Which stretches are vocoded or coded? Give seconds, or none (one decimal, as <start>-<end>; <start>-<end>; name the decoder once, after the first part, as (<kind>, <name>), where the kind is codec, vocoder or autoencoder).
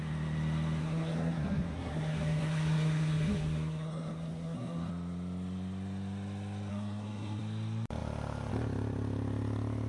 0.8-4.9 (codec, SNAC); 6.7-7.4